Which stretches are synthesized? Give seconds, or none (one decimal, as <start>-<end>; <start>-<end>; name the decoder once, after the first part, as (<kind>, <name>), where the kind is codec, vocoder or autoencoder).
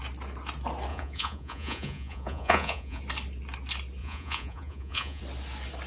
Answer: 0.9-3.0 (vocoder, Vocos); 4.0-5.2